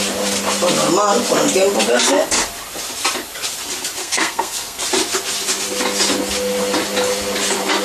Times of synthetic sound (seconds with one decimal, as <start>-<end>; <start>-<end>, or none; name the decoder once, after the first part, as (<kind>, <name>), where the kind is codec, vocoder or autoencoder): 4.0-4.8 (codec, SNAC)